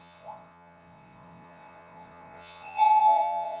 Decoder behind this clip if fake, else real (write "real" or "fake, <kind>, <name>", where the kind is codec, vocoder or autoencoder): fake, vocoder, WaveNeXt